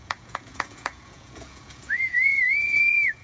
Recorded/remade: remade